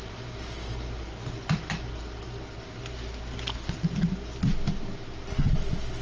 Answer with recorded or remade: recorded